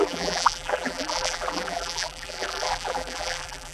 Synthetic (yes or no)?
yes